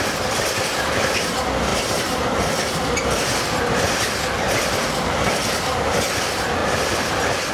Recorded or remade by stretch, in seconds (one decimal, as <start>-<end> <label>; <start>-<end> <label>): 0.0-1.7 recorded; 1.7-2.4 remade; 2.4-7.5 recorded